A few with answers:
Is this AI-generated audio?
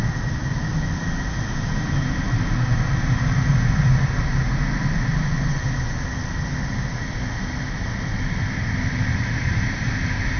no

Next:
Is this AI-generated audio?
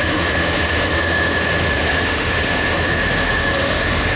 yes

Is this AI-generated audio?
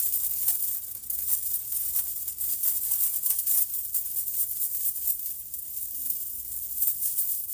no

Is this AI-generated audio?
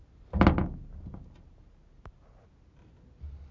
no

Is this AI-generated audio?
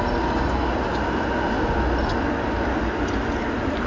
no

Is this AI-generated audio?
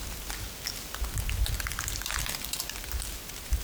no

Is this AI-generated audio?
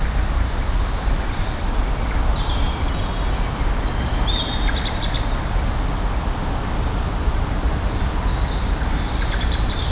no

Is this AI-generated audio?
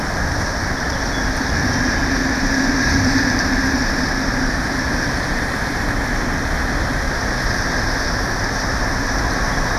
no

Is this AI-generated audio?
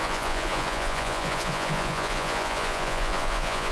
yes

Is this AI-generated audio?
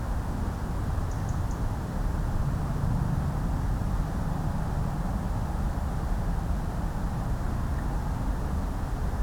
no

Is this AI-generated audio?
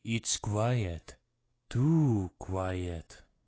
yes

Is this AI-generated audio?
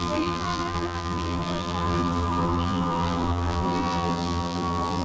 yes